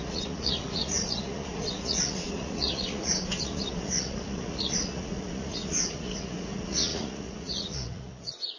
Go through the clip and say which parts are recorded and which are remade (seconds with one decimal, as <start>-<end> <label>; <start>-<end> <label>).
0.0-8.6 remade